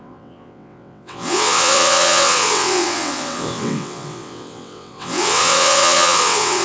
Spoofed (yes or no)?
yes